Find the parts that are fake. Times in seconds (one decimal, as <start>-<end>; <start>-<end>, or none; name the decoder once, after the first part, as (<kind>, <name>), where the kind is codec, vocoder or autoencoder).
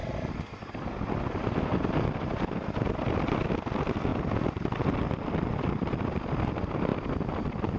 none